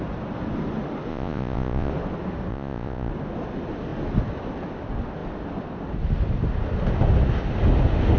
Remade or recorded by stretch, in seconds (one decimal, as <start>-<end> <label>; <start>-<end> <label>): 0.0-1.1 recorded; 1.1-1.9 remade; 1.9-2.5 recorded; 2.5-3.1 remade; 3.1-8.2 recorded

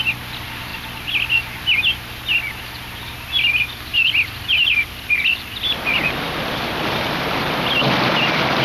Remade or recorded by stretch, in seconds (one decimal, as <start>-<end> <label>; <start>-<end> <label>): 0.0-3.9 recorded; 3.9-7.2 remade; 7.2-8.6 recorded

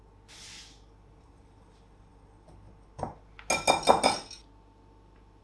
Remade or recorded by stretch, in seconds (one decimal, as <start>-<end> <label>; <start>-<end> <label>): 0.0-5.4 recorded

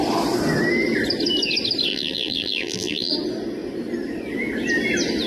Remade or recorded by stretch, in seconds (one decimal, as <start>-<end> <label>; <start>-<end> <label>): 0.0-1.9 recorded; 1.9-3.1 remade; 3.1-5.3 recorded

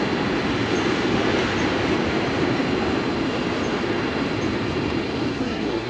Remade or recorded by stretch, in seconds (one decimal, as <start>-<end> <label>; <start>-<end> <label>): 0.0-5.3 recorded; 5.3-5.9 remade